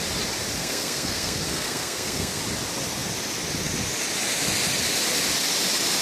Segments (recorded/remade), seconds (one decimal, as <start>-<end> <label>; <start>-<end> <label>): 0.0-0.6 recorded; 0.6-2.4 remade; 2.4-6.0 recorded